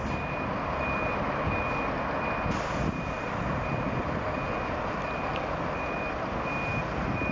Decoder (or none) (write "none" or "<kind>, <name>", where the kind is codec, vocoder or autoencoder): none